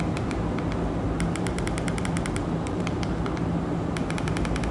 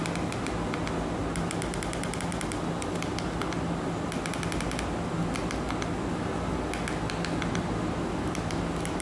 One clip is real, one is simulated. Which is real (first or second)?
second